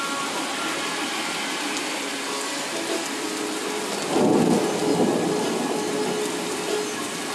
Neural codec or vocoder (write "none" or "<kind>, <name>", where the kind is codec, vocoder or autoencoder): none